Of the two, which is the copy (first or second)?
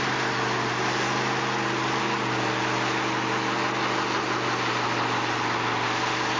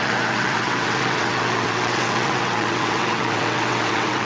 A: second